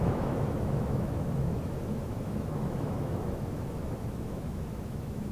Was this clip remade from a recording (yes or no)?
yes